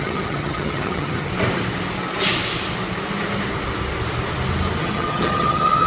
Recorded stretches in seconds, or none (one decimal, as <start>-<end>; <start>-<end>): 1.3-4.8

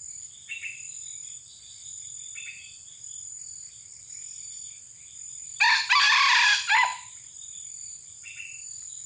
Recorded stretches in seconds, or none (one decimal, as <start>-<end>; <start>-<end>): 0.0-9.1

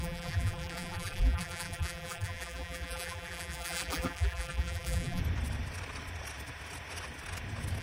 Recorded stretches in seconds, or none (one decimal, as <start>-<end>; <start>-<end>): 5.2-7.8